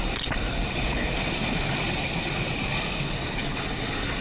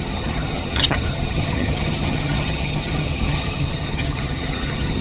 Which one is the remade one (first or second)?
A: second